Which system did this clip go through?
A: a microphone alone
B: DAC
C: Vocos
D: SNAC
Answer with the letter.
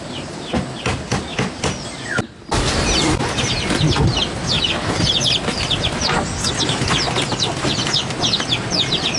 A